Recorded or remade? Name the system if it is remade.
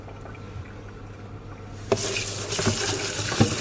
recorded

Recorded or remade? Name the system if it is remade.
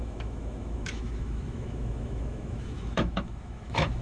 remade, autoencoder, DAC-VAE